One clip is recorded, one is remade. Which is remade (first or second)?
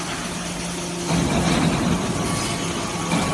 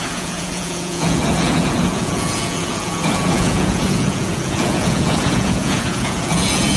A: second